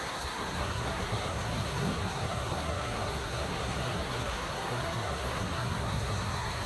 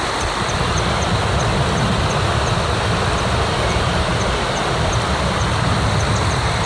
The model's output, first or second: first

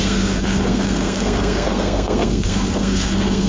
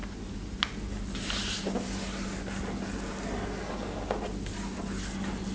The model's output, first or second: first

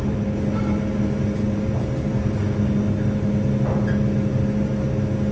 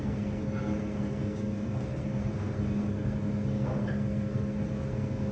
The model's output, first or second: second